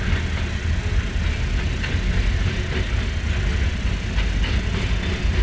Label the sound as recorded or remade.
recorded